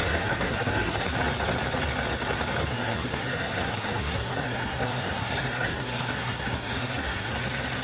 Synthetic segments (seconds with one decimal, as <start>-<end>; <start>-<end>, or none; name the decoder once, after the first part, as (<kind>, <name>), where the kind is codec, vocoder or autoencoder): 0.0-1.1 (codec, SNAC); 2.6-7.3